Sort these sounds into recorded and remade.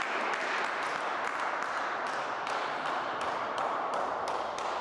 recorded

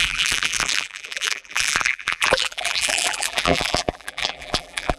remade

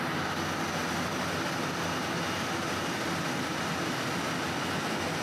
recorded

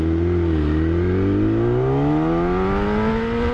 recorded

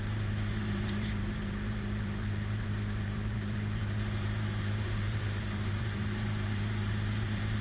remade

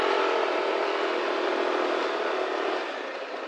remade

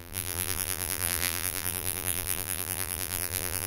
remade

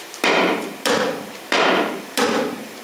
remade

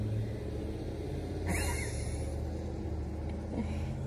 recorded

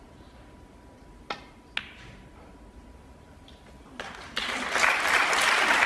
recorded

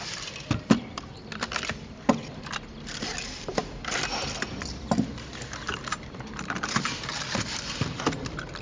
remade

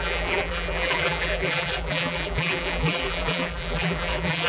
remade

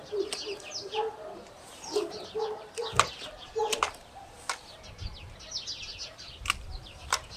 recorded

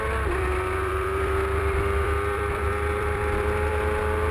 remade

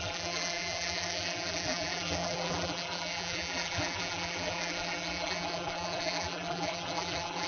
remade